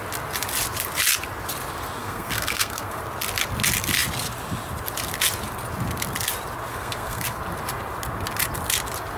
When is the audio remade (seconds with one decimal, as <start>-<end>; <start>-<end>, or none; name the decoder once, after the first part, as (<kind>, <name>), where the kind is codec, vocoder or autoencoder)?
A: 2.0-3.0 (codec, SNAC); 6.7-7.4